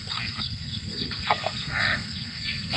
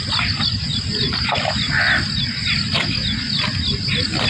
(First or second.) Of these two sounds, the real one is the second